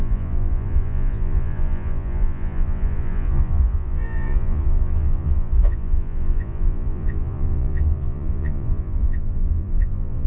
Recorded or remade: remade